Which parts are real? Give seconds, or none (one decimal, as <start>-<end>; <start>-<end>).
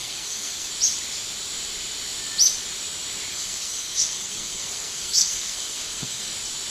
0.7-3.3; 6.3-6.7